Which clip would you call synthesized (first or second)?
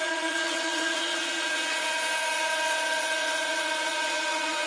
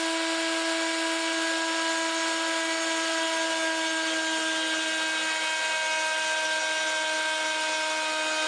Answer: first